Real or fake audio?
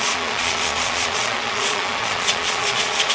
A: fake